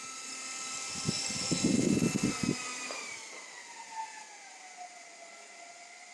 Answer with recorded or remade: recorded